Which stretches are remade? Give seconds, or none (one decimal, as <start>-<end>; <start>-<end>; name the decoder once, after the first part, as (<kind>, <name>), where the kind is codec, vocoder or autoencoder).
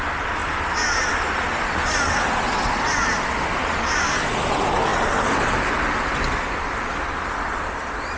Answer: none